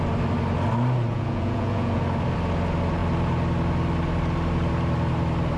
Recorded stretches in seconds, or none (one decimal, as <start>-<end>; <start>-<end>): 0.0-1.1; 2.0-5.6